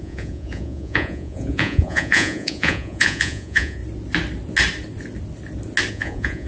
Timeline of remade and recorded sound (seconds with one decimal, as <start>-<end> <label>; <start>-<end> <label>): 0.0-3.8 remade; 3.8-5.9 recorded; 5.9-6.5 remade